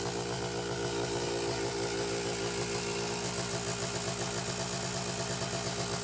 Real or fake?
real